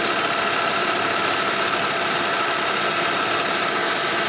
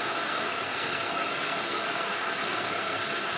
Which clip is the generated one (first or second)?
second